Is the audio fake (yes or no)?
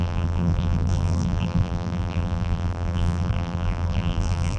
yes